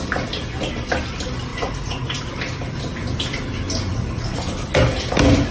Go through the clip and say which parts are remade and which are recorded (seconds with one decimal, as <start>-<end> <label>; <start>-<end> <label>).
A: 0.0-1.5 recorded; 1.5-2.2 remade; 2.2-3.9 recorded; 3.9-4.4 remade; 4.4-5.5 recorded